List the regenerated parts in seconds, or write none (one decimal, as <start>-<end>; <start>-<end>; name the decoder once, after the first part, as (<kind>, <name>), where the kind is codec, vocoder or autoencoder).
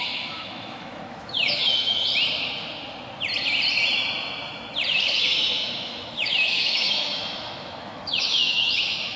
0.0-2.1 (autoencoder, DAC-VAE); 5.0-9.2